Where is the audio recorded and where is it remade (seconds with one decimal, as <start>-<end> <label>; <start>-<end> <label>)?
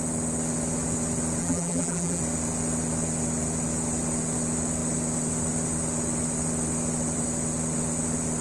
0.0-1.4 recorded; 1.4-2.2 remade; 2.2-8.4 recorded